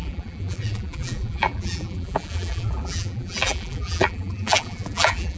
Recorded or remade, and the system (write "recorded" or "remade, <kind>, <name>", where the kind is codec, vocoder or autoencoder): remade, vocoder, BigVGAN v2